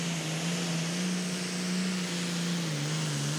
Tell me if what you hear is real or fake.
real